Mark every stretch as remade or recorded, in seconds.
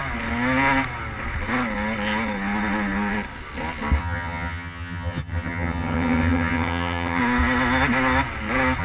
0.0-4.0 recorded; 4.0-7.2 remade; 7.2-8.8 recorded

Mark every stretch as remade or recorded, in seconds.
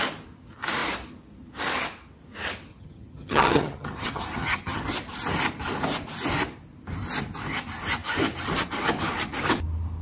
0.0-2.7 recorded; 2.7-4.8 remade; 4.8-10.0 recorded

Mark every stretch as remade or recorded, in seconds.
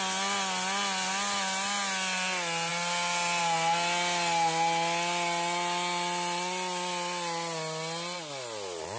0.0-9.0 recorded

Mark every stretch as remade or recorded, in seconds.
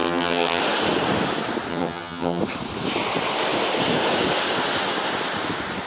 0.0-0.6 remade; 0.6-1.7 recorded; 1.7-2.4 remade; 2.4-5.9 recorded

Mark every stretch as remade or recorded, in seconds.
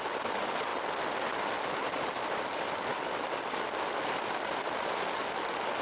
0.0-5.8 recorded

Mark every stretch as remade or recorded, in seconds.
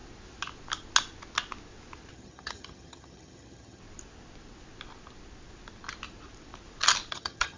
0.0-2.1 recorded; 2.1-3.8 remade; 3.8-7.1 recorded; 7.1-7.6 remade